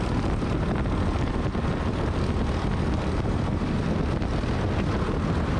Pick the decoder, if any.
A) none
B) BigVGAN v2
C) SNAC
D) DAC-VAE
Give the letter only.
A